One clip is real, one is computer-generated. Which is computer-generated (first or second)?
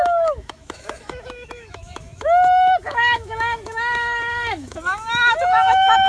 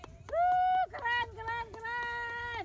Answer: first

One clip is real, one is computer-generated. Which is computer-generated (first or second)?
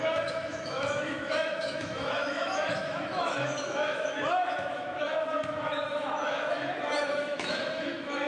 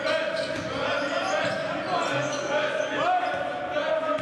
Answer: first